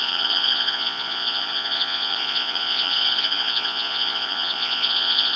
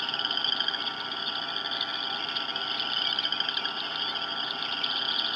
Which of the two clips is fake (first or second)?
first